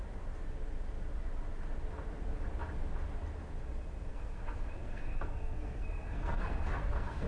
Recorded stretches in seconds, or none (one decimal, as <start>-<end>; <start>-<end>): 0.0-4.1